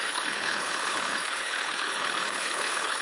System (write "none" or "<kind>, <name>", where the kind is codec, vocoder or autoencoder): codec, HILCodec